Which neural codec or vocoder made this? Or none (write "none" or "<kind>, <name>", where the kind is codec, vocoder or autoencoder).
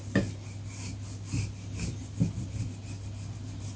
none